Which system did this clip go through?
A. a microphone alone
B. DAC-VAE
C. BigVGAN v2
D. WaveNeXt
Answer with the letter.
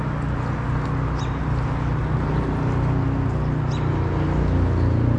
A